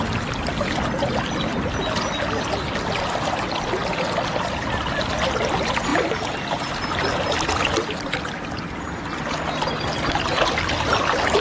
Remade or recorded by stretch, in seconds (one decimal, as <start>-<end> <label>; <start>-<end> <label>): 0.0-5.9 recorded; 5.9-6.7 remade; 6.7-11.4 recorded